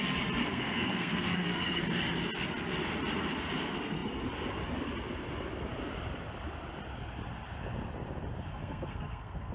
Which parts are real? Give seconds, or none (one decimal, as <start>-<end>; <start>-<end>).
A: 0.0-0.4; 1.8-8.5